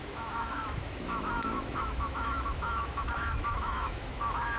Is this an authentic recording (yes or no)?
no